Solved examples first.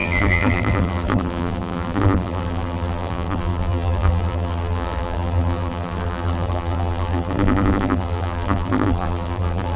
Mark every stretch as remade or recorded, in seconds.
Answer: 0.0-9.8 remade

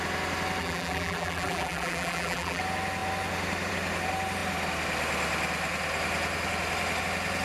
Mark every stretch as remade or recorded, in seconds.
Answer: 0.0-0.6 recorded; 0.6-2.6 remade; 2.6-7.4 recorded